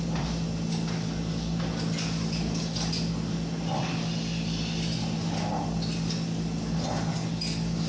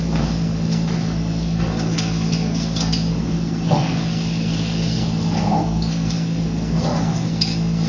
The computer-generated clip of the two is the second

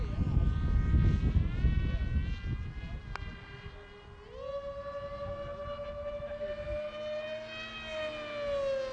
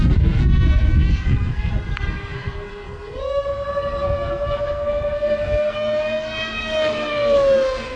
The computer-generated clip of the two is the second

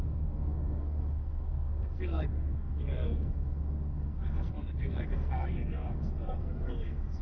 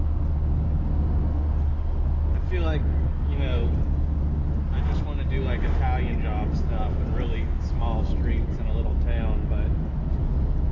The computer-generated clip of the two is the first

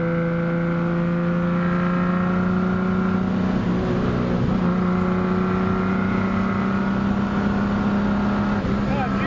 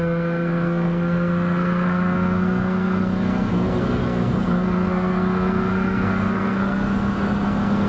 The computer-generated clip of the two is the second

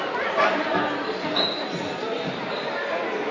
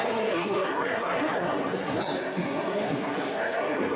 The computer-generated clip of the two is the second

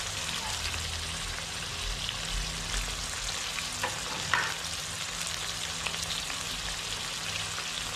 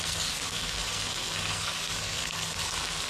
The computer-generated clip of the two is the second